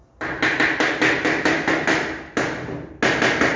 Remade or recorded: recorded